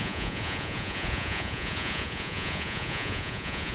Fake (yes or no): yes